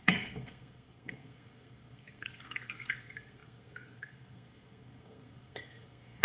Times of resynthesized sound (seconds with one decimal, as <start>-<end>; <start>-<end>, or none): 0.0-6.2